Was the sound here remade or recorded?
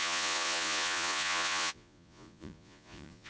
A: remade